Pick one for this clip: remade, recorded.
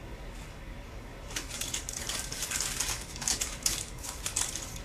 remade